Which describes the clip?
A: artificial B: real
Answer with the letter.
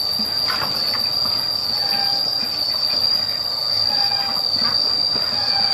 B